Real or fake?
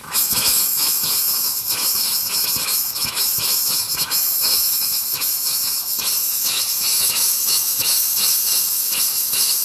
fake